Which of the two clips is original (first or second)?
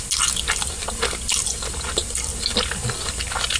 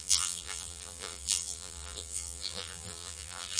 first